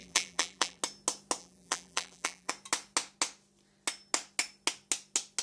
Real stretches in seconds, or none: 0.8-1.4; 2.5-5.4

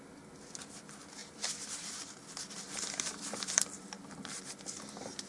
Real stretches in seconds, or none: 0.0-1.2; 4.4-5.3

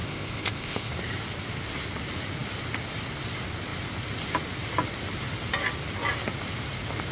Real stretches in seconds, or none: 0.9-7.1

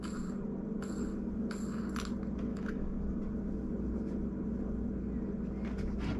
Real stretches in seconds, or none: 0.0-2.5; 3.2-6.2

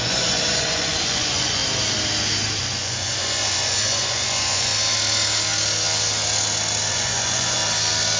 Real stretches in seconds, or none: 1.6-2.6; 4.7-6.9; 7.6-8.2

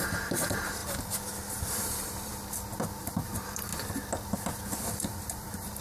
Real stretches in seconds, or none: 0.8-1.7; 2.3-3.0; 3.7-4.8